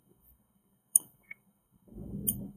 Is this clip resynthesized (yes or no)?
yes